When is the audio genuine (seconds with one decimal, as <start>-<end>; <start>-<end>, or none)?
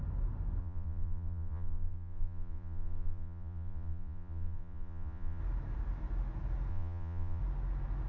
0.0-0.6; 5.4-6.7; 7.4-8.1